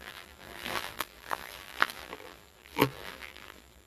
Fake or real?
fake